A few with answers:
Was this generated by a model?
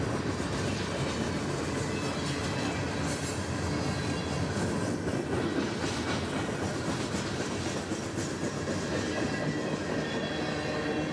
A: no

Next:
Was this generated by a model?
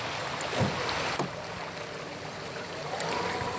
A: no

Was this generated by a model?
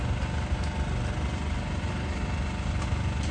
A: no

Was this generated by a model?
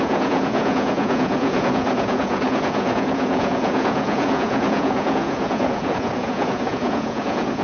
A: yes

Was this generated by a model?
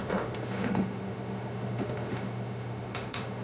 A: yes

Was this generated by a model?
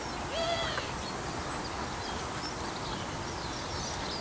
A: no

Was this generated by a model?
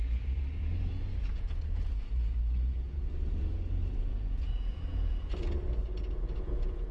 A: yes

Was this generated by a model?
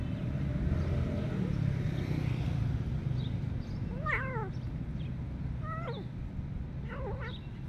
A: no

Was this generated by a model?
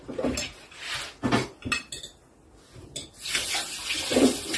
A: no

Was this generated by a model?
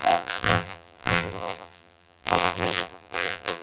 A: yes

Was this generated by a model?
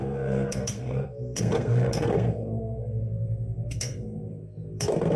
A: yes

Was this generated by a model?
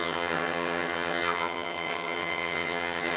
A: yes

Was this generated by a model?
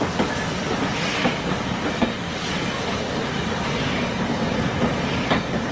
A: no